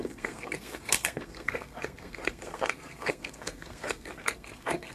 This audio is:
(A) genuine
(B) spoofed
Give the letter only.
B